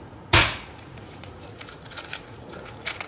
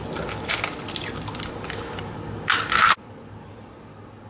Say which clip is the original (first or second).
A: second